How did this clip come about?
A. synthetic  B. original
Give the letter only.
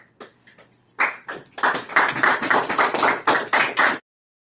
B